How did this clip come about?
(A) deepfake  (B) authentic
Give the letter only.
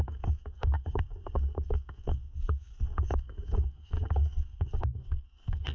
A